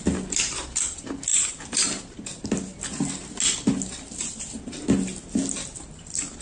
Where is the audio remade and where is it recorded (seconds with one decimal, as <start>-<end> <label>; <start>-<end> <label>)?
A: 0.0-5.2 recorded; 5.2-6.4 remade